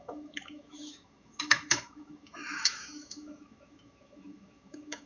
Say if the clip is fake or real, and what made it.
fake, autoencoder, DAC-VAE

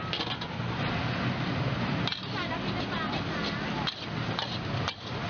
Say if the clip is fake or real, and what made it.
real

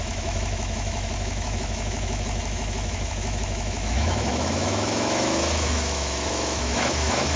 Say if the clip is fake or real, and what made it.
fake, autoencoder, DAC-VAE